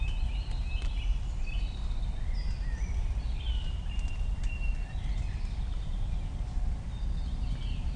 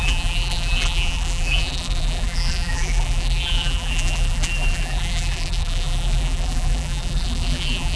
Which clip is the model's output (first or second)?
second